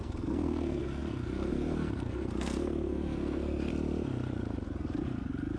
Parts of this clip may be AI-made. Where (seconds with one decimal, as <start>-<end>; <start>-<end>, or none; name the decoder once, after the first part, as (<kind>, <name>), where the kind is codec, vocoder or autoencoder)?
0.0-3.7 (codec, SNAC)